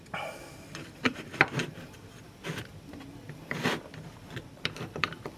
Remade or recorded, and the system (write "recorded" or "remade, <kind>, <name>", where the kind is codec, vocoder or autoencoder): remade, vocoder, BigVGAN v2